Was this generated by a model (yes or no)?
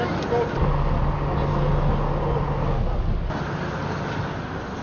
no